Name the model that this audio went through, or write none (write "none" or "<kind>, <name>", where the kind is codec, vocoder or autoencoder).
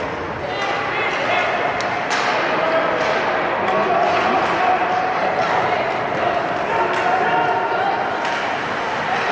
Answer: none